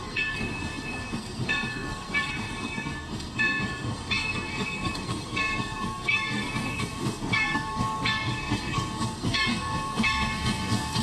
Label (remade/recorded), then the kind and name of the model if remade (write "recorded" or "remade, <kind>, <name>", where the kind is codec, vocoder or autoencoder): remade, codec, SNAC